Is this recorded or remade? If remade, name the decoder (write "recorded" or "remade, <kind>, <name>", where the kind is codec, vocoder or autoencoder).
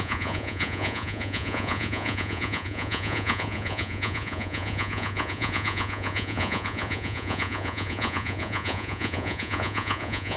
remade, vocoder, Vocos